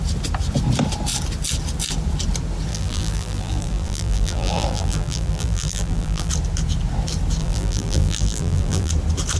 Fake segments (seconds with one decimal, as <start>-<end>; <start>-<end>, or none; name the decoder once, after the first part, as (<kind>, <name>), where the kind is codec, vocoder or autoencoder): 2.7-6.3 (vocoder, BigVGAN v2); 7.4-8.9